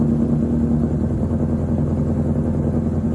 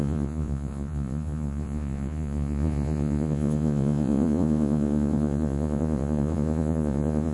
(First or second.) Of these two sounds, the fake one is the second